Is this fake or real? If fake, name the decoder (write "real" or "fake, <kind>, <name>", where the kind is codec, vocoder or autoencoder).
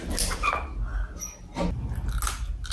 real